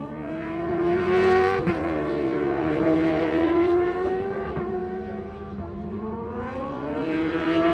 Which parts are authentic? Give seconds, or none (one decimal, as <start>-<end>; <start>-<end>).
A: 4.8-5.9